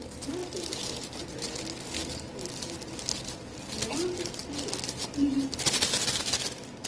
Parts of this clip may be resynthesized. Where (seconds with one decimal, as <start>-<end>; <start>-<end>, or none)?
none